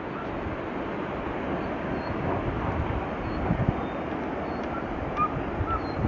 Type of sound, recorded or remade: recorded